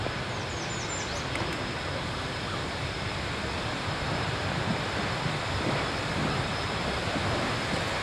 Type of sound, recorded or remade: remade